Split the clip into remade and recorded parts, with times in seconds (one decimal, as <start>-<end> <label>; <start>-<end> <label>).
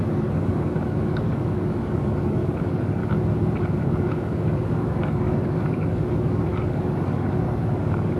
0.0-3.0 remade; 3.0-3.6 recorded; 3.6-8.2 remade